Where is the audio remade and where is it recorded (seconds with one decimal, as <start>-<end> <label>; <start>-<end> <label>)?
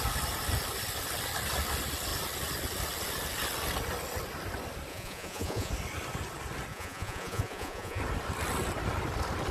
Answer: 0.0-4.9 recorded; 4.9-5.7 remade; 5.7-6.7 recorded; 6.7-8.0 remade; 8.0-9.5 recorded